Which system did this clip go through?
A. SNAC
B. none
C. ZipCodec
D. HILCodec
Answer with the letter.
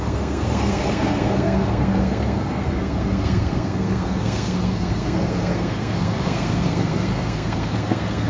A